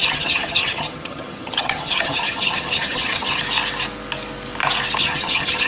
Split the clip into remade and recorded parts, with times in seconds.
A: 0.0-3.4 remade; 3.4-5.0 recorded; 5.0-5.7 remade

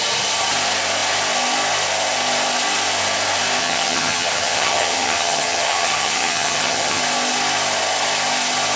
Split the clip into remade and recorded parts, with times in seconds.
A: 0.0-3.6 recorded; 3.6-7.0 remade; 7.0-8.8 recorded

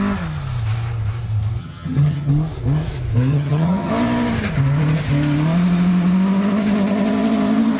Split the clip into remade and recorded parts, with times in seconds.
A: 0.0-1.6 recorded; 1.6-2.3 remade; 2.3-3.3 recorded; 3.3-3.9 remade; 3.9-7.8 recorded

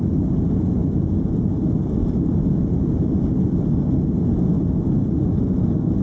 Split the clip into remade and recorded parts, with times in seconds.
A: 0.0-6.0 recorded